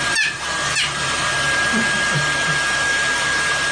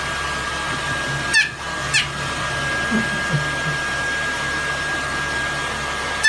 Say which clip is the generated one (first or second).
first